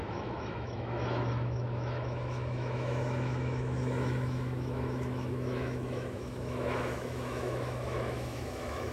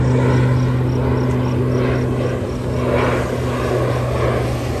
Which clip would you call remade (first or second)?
first